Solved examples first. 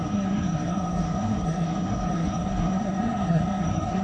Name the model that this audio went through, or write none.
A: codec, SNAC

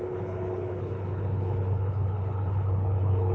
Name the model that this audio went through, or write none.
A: codec, HILCodec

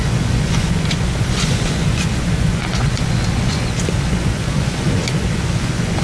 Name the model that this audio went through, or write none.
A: vocoder, Vocos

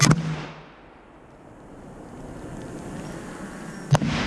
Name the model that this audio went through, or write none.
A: none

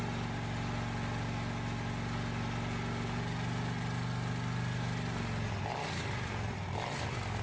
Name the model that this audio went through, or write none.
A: none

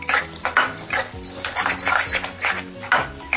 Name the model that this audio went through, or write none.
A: none